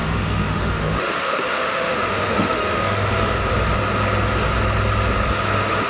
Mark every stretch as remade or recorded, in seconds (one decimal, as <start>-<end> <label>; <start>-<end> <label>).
0.0-3.5 remade; 3.5-5.9 recorded